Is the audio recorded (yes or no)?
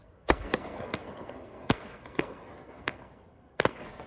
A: no